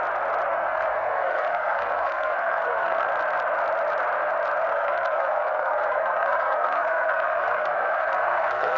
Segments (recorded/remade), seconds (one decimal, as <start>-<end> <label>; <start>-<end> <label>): 0.0-0.5 recorded; 0.5-3.1 remade; 3.1-4.7 recorded; 4.7-8.8 remade